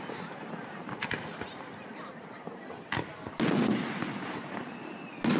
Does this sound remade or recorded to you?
remade